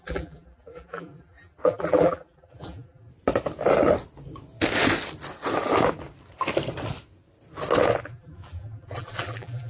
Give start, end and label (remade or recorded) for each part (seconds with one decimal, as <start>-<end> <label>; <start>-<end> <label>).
0.0-3.1 remade; 3.1-8.0 recorded; 8.0-9.7 remade